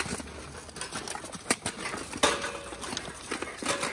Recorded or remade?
recorded